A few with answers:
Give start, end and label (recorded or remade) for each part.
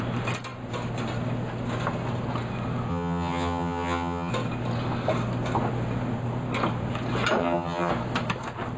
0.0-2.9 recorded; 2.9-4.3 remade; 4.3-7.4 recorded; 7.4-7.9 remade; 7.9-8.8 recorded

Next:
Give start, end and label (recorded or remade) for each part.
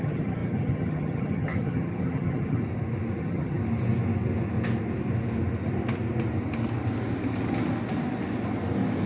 0.0-2.6 remade; 2.6-3.2 recorded; 3.2-3.6 remade; 3.6-9.1 recorded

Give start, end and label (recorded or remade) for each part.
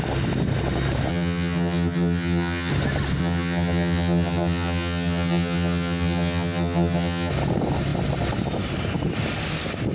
0.0-1.1 recorded; 1.1-2.7 remade; 2.7-3.2 recorded; 3.2-7.3 remade; 7.3-9.9 recorded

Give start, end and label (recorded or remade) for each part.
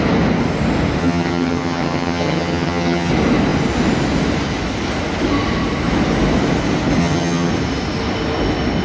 0.0-1.0 recorded; 1.0-3.1 remade; 3.1-7.0 recorded; 7.0-7.5 remade; 7.5-8.8 recorded